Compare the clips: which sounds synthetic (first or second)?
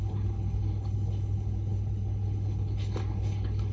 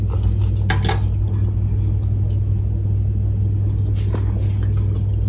first